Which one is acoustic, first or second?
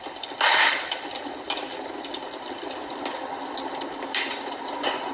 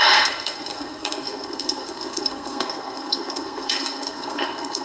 first